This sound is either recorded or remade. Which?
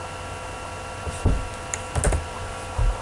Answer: recorded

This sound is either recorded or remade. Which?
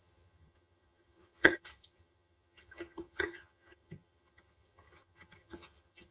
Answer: remade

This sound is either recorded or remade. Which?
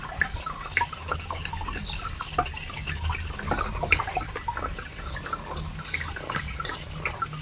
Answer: recorded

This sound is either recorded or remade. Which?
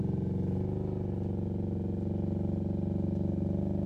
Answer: recorded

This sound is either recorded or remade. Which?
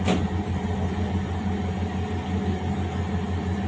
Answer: recorded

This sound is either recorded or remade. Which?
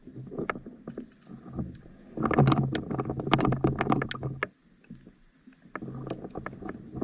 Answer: recorded